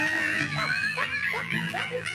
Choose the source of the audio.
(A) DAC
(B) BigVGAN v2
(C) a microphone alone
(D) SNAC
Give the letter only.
B